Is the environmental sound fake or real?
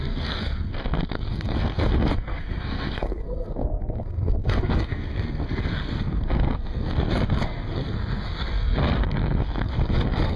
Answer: fake